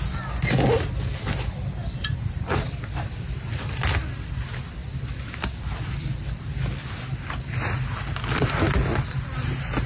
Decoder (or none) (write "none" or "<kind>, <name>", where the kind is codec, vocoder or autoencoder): none